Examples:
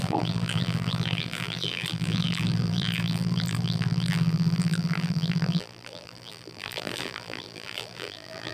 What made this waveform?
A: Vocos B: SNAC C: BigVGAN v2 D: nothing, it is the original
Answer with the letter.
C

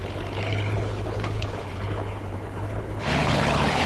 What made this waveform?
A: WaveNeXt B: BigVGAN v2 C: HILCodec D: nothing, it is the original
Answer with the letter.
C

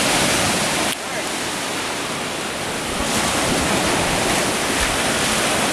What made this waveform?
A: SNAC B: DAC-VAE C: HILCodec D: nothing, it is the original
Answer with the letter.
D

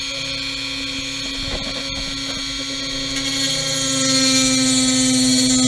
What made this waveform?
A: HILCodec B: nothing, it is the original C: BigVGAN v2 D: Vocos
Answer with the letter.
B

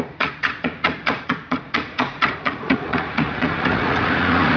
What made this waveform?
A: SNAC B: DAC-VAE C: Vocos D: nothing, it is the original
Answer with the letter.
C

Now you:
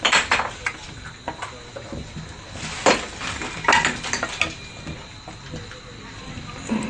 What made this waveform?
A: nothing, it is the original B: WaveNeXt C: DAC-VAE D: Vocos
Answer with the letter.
A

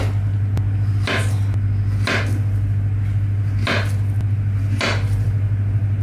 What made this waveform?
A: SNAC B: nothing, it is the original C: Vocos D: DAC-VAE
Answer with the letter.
B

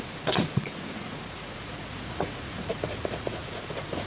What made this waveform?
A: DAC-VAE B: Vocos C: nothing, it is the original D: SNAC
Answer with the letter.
B